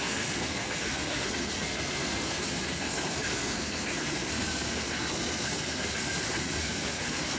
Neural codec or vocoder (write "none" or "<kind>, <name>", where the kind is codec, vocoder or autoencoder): codec, SNAC